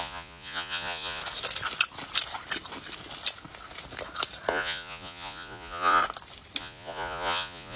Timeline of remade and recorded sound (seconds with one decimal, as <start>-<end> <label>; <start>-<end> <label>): 0.0-1.2 remade; 1.2-4.5 recorded; 4.5-6.0 remade; 6.0-6.6 recorded; 6.6-7.8 remade